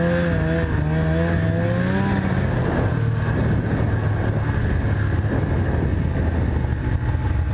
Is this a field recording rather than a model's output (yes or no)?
yes